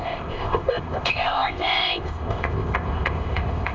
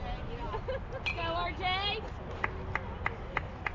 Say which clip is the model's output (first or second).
first